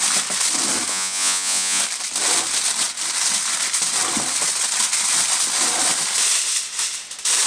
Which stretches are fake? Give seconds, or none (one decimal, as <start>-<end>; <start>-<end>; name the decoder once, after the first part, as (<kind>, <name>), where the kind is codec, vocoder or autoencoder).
0.9-1.8 (vocoder, Vocos)